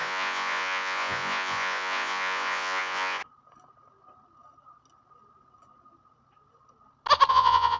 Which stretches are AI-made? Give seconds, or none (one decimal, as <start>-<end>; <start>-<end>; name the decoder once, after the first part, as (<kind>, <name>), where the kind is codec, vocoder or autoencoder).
0.0-3.2 (vocoder, Vocos); 7.3-7.8